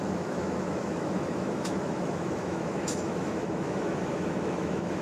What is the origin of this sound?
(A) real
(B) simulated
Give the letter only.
B